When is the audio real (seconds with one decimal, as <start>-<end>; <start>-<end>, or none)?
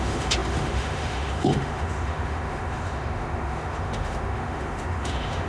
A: none